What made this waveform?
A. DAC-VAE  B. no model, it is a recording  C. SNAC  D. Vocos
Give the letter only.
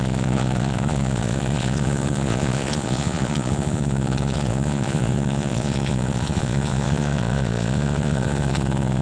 D